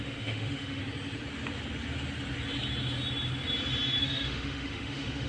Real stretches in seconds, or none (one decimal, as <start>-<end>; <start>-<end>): 0.8-4.0